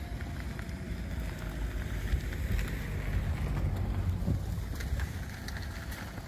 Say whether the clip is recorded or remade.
recorded